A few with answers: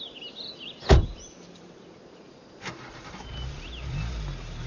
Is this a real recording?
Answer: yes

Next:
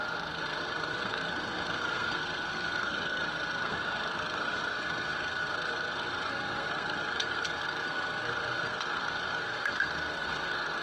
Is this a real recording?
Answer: no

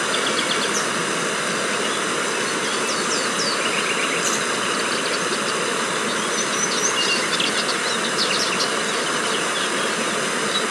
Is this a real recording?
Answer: yes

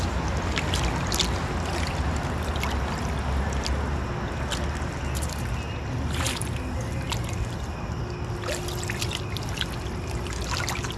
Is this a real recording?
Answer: yes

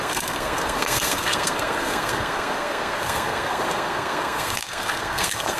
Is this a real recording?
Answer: no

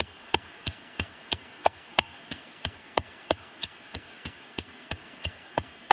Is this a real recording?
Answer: no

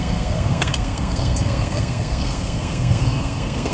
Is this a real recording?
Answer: no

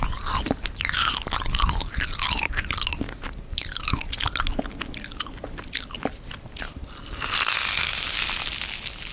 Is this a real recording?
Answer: yes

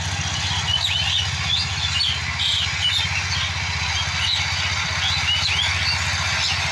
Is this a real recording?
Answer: yes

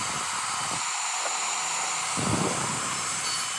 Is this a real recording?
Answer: yes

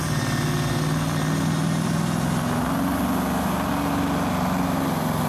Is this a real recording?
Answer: yes